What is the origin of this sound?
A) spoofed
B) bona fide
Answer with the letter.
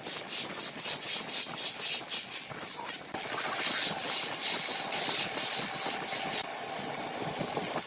B